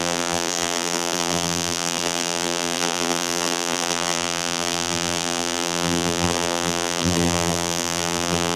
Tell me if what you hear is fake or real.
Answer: fake